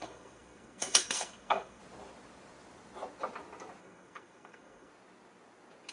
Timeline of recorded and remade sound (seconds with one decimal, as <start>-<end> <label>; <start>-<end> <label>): 0.0-1.8 remade; 1.8-3.8 recorded; 3.8-4.9 remade; 4.9-5.9 recorded